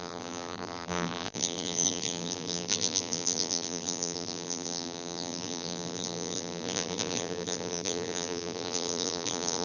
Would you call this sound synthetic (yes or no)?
yes